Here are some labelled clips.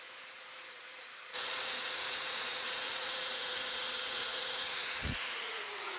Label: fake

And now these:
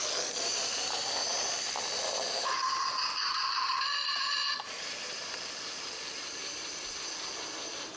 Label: fake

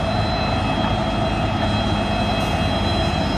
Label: real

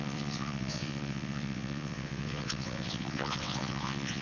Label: fake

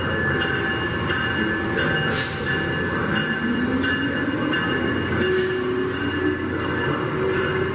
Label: real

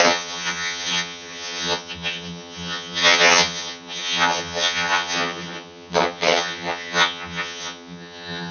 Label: fake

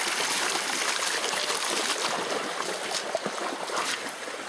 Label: real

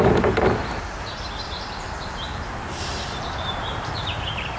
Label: fake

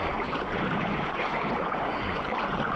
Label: fake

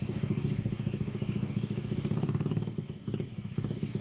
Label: fake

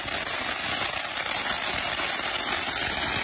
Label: real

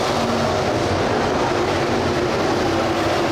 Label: real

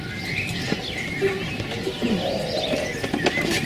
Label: real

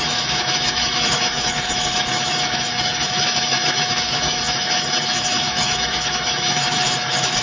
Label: fake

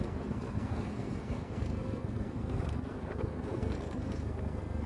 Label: fake